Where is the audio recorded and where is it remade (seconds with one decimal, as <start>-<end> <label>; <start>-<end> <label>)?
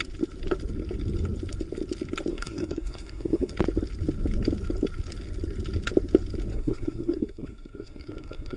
0.0-2.3 recorded; 2.3-3.5 remade; 3.5-6.5 recorded; 6.5-8.6 remade